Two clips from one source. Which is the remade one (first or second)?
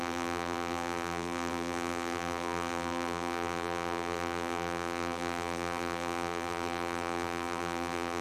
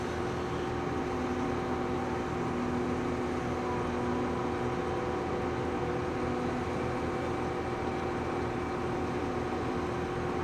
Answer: first